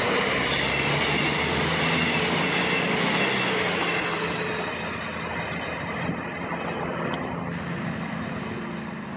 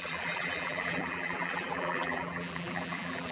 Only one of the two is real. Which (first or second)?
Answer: first